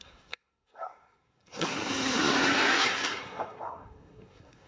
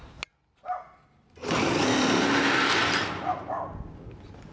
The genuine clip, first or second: second